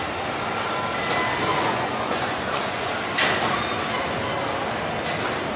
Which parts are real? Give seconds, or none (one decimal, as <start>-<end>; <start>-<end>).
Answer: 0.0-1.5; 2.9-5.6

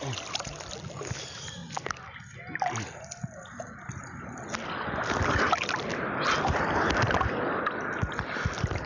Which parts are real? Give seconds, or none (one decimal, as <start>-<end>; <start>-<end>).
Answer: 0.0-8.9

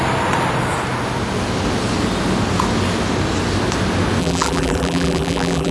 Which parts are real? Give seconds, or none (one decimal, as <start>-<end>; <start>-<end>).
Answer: 0.0-4.2

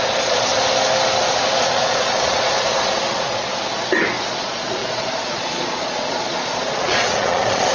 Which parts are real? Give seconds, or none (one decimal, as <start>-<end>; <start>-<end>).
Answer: 0.5-1.5; 3.5-4.3

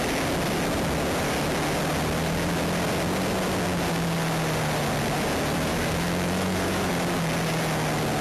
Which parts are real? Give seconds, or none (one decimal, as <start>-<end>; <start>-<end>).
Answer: 0.0-5.7; 6.9-8.2